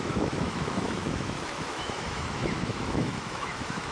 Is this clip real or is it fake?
fake